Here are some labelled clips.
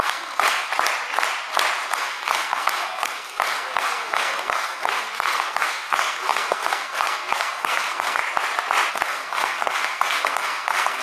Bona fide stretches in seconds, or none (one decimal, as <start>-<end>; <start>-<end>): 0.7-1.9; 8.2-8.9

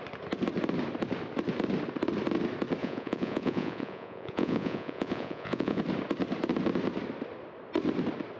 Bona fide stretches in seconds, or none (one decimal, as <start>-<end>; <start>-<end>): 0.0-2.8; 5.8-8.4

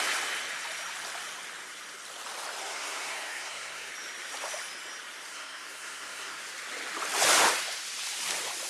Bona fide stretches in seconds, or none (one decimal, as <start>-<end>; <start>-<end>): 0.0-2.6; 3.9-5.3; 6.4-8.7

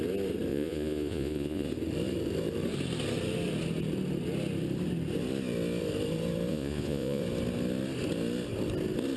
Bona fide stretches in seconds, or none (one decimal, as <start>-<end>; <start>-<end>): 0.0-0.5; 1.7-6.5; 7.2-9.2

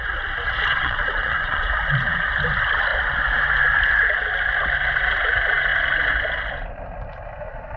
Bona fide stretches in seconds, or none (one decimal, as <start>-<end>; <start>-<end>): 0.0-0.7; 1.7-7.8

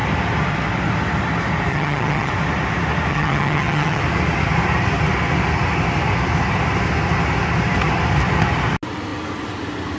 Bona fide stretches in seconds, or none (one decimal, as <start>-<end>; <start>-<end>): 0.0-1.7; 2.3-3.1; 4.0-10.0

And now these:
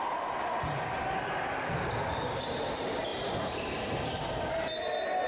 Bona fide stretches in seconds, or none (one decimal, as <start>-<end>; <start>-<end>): 0.0-5.3

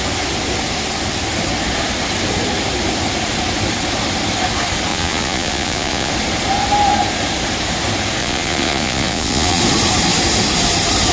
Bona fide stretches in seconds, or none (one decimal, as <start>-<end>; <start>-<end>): 0.0-4.9; 6.1-8.2; 9.6-11.1